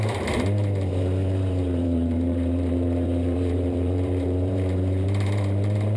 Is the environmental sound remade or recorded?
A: remade